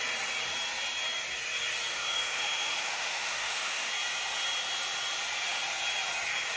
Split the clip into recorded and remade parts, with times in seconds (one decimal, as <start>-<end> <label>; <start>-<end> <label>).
0.0-1.9 recorded; 1.9-3.9 remade; 3.9-6.6 recorded